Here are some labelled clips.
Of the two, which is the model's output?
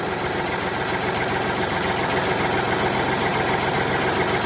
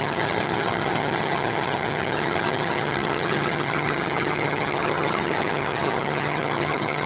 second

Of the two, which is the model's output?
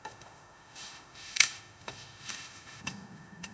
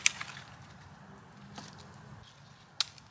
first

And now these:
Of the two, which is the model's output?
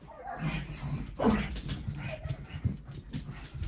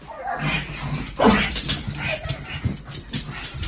first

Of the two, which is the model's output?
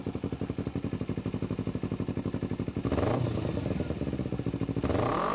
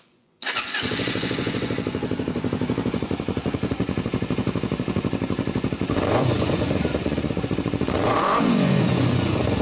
second